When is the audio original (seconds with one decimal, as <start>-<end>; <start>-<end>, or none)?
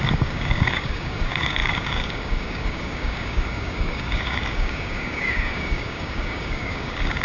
none